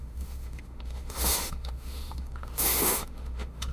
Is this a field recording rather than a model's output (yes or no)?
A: no